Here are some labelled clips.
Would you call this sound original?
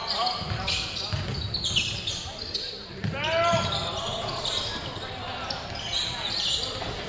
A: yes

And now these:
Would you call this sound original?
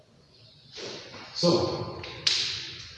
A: no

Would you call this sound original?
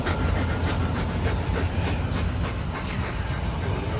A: yes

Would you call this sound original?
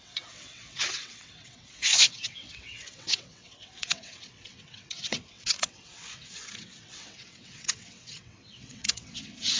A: no